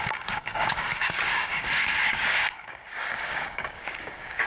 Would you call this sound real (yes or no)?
no